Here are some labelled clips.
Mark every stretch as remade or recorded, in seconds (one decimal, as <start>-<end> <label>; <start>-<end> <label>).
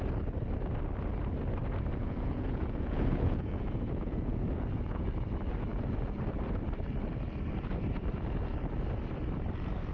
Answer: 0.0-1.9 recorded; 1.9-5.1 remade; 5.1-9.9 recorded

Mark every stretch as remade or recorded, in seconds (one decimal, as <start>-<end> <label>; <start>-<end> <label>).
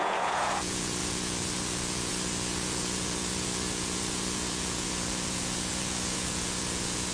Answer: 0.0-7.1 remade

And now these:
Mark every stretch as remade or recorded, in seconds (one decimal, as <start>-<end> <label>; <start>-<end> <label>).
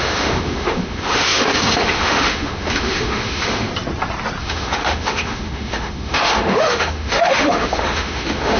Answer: 0.0-3.7 remade; 3.7-4.4 recorded; 4.4-8.6 remade